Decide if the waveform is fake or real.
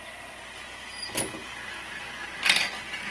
real